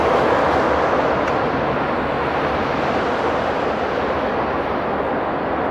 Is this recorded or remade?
recorded